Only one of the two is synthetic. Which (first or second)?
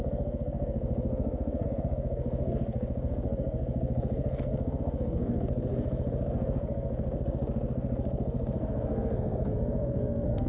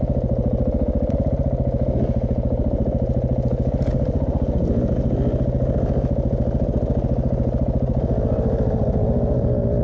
first